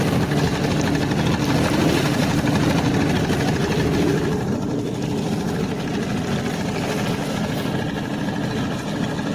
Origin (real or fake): real